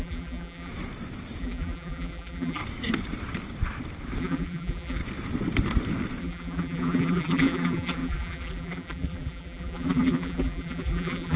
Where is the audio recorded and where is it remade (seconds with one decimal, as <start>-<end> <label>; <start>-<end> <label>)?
0.0-0.7 remade; 0.7-1.4 recorded; 1.4-2.6 remade; 2.6-4.2 recorded; 4.2-5.0 remade; 5.0-6.2 recorded; 6.2-11.4 remade